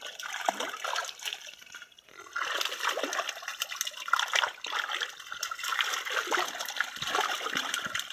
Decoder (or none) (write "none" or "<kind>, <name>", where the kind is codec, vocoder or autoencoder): none